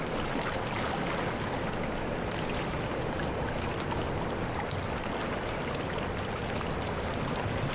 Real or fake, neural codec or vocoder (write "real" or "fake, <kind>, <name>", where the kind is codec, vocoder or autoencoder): real